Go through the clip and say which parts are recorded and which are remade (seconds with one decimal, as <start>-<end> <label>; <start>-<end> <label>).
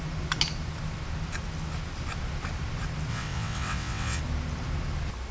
0.0-3.1 recorded; 3.1-4.2 remade; 4.2-5.3 recorded